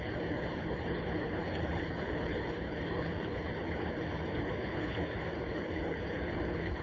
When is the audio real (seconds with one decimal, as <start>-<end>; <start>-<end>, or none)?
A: none